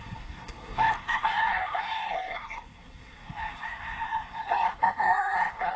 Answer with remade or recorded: remade